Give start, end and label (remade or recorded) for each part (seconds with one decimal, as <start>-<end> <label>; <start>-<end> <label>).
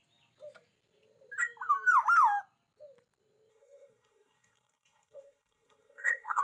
0.0-3.5 recorded; 3.5-6.4 remade